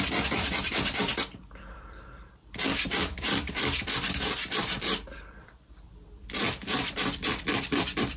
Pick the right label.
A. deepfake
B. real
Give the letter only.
A